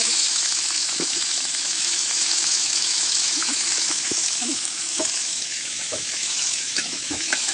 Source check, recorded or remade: remade